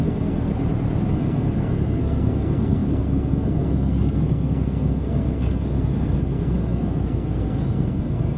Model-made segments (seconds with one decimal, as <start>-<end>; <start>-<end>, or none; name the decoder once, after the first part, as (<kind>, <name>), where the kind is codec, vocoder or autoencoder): 0.0-0.5 (codec, SNAC); 1.1-8.4